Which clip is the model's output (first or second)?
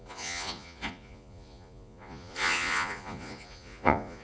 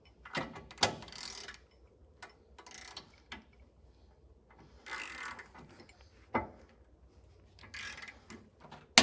first